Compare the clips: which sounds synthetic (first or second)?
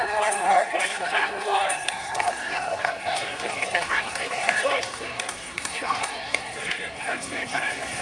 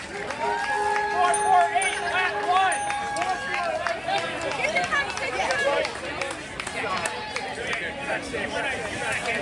first